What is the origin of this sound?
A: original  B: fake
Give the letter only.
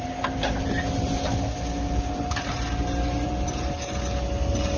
A